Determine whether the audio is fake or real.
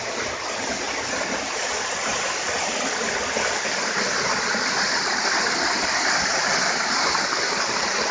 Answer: real